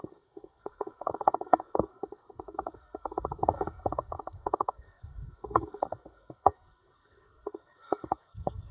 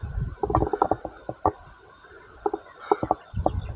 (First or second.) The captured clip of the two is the second